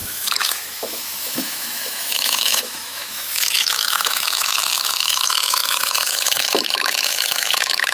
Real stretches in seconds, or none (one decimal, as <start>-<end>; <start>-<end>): none